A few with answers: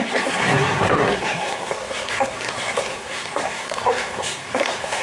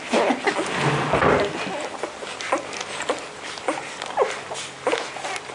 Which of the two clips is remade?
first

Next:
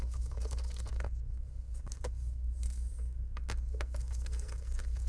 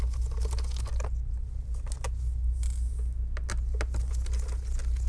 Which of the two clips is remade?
first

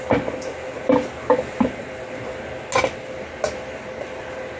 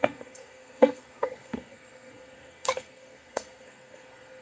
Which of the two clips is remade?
second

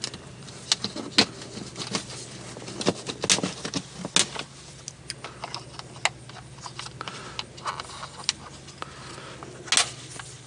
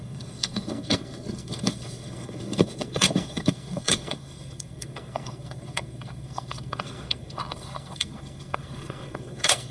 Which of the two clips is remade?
second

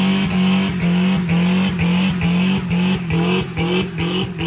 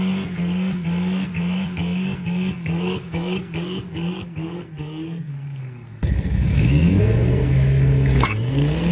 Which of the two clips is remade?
second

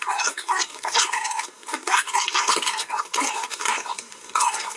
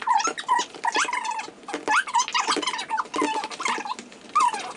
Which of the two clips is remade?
first